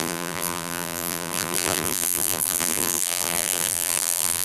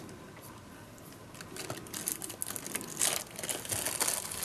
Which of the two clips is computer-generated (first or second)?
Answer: first